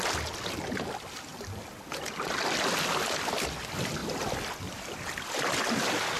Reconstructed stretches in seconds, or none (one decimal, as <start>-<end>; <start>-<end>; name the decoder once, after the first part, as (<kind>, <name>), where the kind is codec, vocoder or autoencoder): none